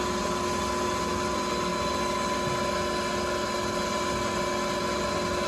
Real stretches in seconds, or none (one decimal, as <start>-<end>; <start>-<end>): 0.0-5.5